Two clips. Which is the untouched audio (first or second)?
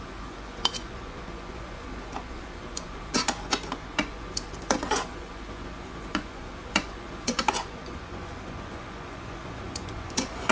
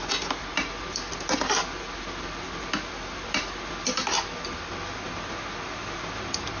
second